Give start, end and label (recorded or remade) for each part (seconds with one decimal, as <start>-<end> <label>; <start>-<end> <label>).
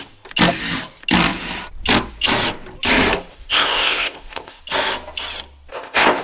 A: 0.0-3.3 recorded; 3.3-4.6 remade; 4.6-5.7 recorded; 5.7-6.2 remade